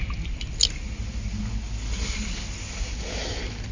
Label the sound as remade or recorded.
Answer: recorded